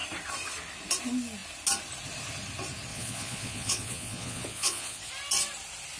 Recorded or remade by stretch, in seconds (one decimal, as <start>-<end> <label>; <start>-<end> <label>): 0.0-2.9 recorded; 2.9-5.1 remade; 5.1-6.0 recorded